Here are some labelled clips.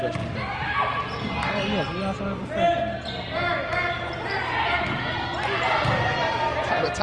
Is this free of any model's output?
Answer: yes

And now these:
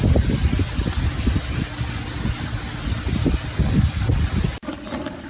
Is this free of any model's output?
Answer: yes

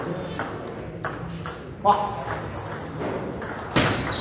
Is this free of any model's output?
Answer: yes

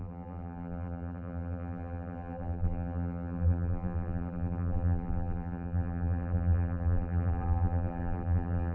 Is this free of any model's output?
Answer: no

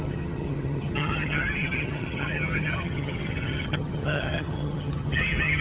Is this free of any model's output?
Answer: no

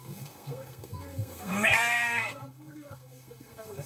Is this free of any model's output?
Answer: no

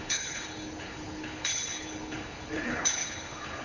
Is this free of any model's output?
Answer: no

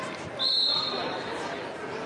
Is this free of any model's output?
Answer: yes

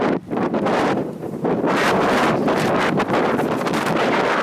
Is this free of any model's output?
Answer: no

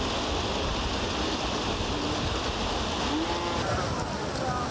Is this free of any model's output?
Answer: yes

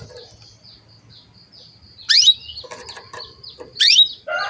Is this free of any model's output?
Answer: yes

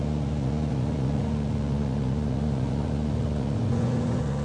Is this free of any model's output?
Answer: no